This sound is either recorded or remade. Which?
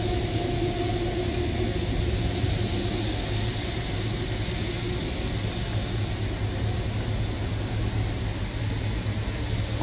recorded